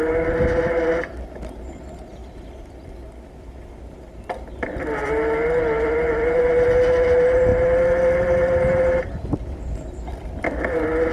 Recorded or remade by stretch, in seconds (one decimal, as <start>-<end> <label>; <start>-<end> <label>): 0.0-11.1 recorded